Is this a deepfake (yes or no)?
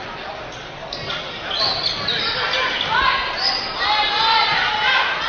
no